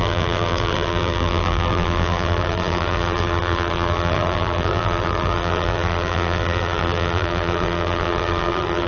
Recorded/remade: remade